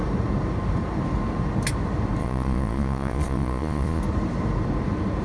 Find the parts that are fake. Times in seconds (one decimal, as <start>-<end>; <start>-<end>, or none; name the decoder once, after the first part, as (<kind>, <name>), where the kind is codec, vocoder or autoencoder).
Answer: 2.2-4.0 (vocoder, Vocos)